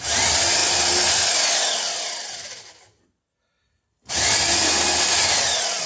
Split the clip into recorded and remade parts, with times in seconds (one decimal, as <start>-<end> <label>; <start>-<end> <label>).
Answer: 0.0-5.9 recorded